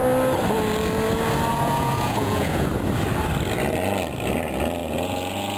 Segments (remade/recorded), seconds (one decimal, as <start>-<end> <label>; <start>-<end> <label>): 0.0-1.5 recorded; 1.5-2.7 remade; 2.7-4.8 recorded; 4.8-5.6 remade